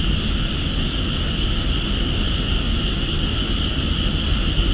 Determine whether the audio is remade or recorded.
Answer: recorded